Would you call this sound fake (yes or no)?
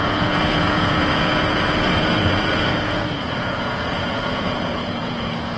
yes